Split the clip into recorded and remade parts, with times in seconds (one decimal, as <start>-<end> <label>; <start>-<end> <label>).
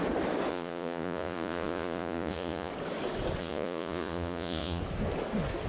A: 0.0-0.5 recorded; 0.5-2.7 remade; 2.7-3.4 recorded; 3.4-4.8 remade; 4.8-5.7 recorded